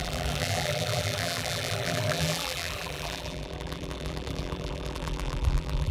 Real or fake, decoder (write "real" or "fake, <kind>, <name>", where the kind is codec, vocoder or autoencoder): fake, vocoder, BigVGAN v2